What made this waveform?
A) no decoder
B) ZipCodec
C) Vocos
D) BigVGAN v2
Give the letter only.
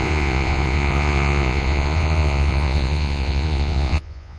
C